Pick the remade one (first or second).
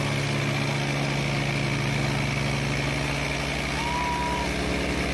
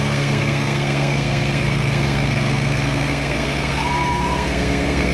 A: second